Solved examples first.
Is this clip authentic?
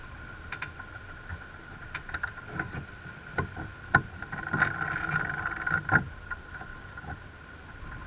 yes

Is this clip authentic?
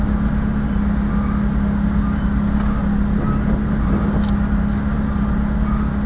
yes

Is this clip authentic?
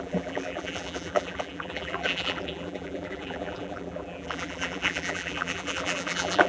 no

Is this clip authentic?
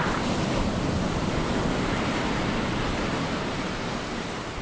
no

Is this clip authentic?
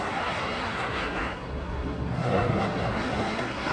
no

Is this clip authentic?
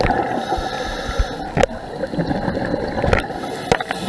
yes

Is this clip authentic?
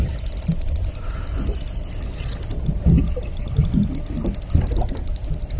yes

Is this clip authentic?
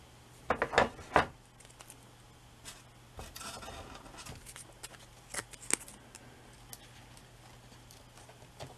yes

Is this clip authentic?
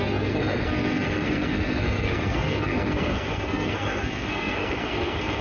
no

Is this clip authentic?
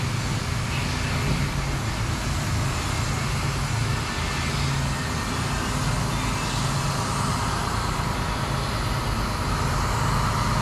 yes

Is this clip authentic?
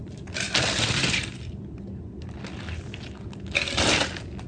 yes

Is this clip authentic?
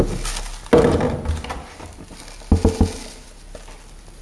yes